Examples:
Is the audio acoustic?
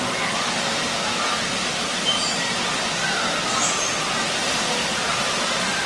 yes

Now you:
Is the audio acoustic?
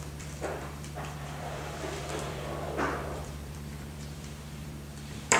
no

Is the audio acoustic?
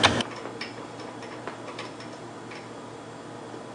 yes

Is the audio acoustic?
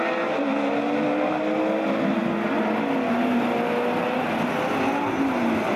yes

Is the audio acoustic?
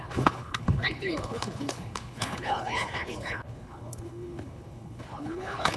no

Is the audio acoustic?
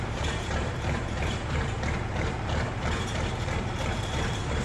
no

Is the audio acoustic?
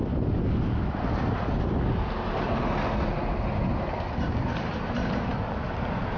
yes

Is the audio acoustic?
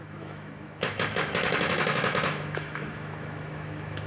no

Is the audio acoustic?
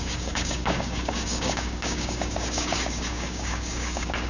no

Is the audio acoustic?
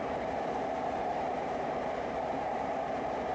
no